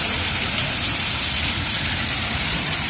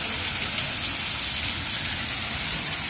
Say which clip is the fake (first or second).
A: first